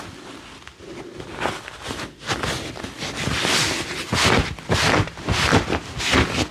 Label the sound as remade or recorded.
recorded